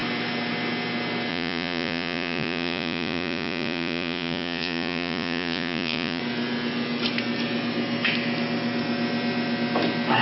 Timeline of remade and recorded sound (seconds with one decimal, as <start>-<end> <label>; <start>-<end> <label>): 0.0-1.3 recorded; 1.3-6.2 remade; 6.2-10.2 recorded